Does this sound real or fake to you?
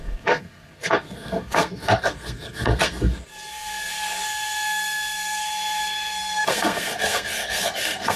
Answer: fake